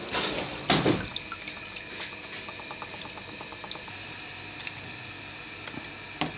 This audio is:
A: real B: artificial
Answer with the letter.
A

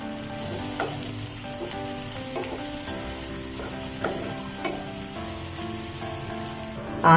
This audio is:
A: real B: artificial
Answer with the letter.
A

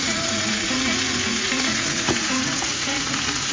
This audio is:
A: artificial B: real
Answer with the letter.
A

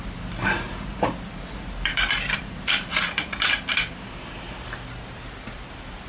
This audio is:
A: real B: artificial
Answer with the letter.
B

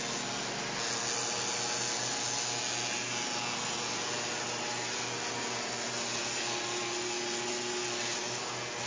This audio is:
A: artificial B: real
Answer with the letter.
B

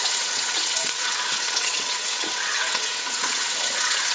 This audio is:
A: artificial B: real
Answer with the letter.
A